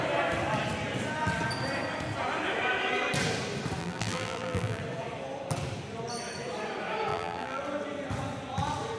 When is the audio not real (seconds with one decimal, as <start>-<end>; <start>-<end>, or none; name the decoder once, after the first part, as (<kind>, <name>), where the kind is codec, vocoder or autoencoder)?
3.8-4.8 (vocoder, BigVGAN v2); 7.1-7.6